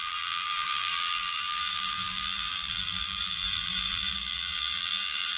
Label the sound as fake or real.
fake